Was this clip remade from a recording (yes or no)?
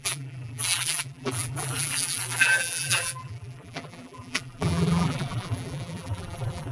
yes